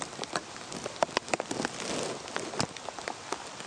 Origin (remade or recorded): recorded